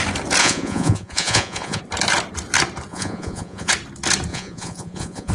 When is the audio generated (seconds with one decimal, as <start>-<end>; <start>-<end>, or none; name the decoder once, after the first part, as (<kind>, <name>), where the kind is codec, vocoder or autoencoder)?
0.4-1.8 (vocoder, Vocos); 2.9-3.7; 4.3-5.3